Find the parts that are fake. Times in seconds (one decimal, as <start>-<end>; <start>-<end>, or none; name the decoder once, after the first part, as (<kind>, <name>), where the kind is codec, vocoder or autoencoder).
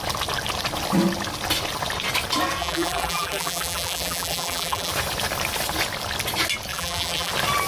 2.6-4.9 (vocoder, BigVGAN v2); 6.7-7.3